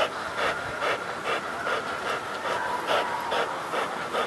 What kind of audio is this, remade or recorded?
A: recorded